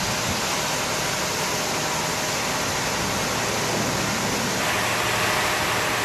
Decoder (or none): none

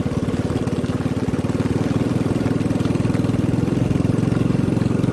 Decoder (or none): none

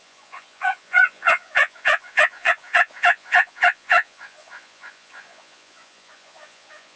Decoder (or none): vocoder, Vocos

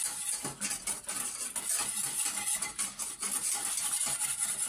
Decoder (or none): none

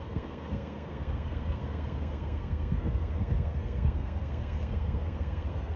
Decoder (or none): codec, SNAC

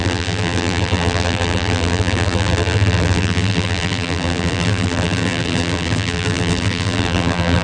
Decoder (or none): vocoder, BigVGAN v2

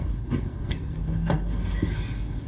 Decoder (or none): codec, SNAC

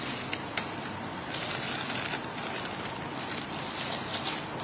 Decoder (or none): none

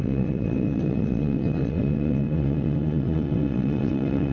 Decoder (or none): vocoder, WaveNeXt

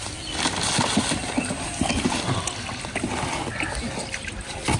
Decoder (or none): none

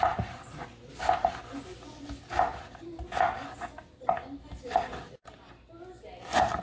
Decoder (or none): none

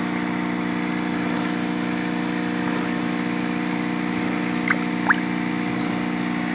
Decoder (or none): none